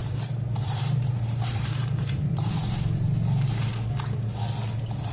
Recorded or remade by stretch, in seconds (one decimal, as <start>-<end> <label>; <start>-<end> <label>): 0.0-3.1 remade; 3.1-5.1 recorded